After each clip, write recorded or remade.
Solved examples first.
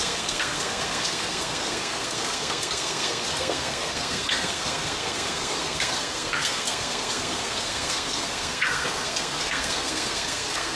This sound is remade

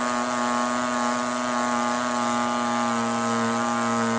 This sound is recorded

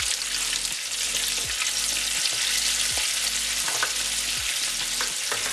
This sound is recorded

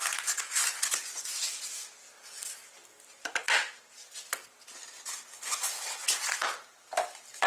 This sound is recorded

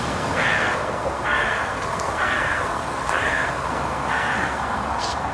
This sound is remade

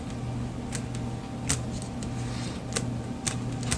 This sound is recorded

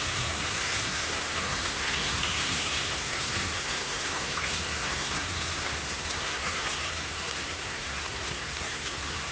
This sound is remade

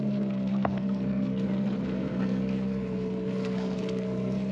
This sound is remade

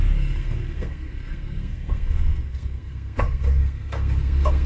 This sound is remade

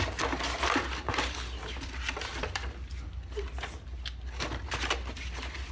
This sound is recorded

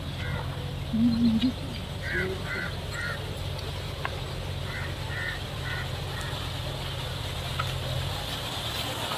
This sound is recorded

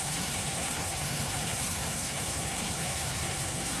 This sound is remade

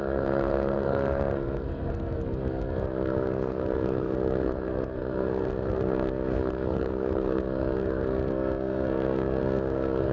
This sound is remade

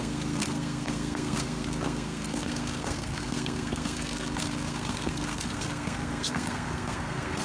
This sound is remade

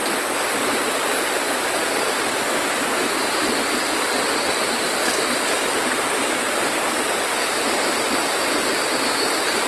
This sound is recorded